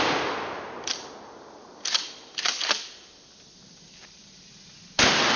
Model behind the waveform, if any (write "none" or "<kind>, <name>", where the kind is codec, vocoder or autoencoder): none